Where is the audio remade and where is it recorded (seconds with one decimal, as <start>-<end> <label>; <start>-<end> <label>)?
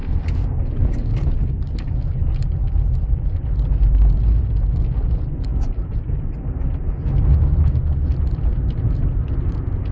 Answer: 0.0-5.5 recorded; 5.5-6.2 remade; 6.2-8.5 recorded; 8.5-9.0 remade; 9.0-9.9 recorded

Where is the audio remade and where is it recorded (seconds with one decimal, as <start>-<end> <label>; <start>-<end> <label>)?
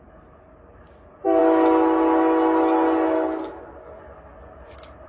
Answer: 0.0-5.1 recorded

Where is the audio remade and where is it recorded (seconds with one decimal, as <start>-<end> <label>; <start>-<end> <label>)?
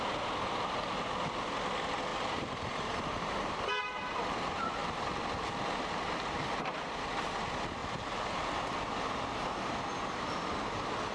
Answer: 0.0-2.1 recorded; 2.1-3.8 remade; 3.8-4.8 recorded; 4.8-6.6 remade; 6.6-7.8 recorded; 7.8-8.6 remade; 8.6-11.1 recorded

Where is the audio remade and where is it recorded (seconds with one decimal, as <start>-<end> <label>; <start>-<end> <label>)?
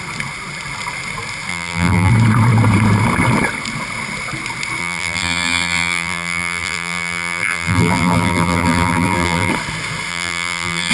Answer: 0.0-1.5 recorded; 1.5-2.1 remade; 2.1-4.8 recorded; 4.8-9.5 remade; 9.5-10.1 recorded; 10.1-10.9 remade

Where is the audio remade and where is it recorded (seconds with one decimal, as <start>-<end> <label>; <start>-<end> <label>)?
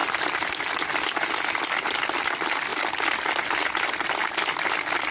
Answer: 0.0-0.6 remade; 0.6-2.7 recorded; 2.7-3.2 remade; 3.2-5.1 recorded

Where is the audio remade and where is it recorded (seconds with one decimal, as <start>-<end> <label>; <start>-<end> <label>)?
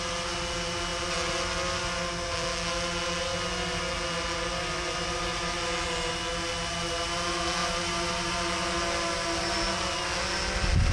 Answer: 0.0-7.6 recorded; 7.6-8.3 remade; 8.3-10.9 recorded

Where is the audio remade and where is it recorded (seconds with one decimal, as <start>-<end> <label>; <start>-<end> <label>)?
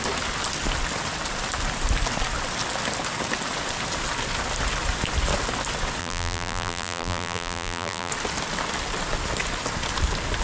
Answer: 0.0-6.0 recorded; 6.0-8.1 remade; 8.1-10.4 recorded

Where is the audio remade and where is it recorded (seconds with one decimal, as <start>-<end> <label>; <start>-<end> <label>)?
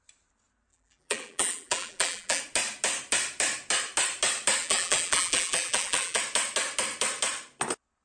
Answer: 0.0-0.7 recorded; 0.7-2.4 remade; 2.4-4.6 recorded; 4.6-6.2 remade; 6.2-8.0 recorded